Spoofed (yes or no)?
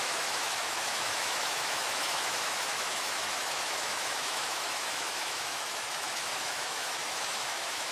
yes